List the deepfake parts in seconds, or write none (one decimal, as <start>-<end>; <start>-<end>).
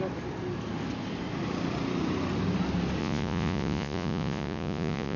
3.0-5.2